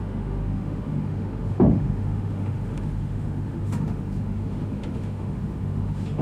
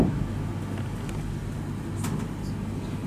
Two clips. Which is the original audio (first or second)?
second